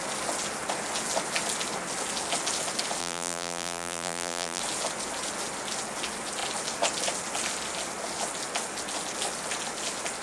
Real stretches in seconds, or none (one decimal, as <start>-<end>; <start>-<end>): 0.0-3.0; 4.6-10.2